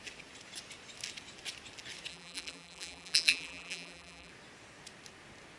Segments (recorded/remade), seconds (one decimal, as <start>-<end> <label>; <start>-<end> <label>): 0.0-2.1 recorded; 2.1-4.3 remade; 4.3-5.6 recorded